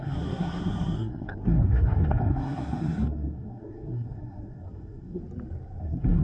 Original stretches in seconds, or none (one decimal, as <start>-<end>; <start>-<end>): 5.2-5.8